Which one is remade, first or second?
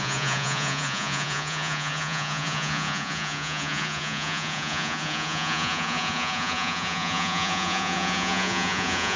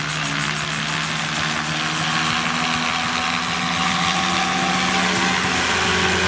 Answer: first